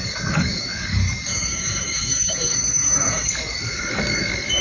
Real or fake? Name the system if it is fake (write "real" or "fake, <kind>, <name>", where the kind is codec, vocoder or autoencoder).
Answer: fake, codec, DAC